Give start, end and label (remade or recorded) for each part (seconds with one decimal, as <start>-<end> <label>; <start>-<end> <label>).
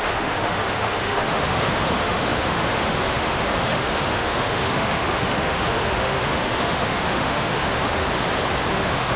0.0-8.0 remade; 8.0-8.7 recorded; 8.7-9.2 remade